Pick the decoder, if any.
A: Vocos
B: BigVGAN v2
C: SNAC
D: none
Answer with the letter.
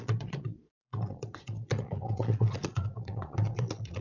A